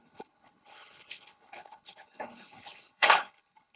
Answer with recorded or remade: remade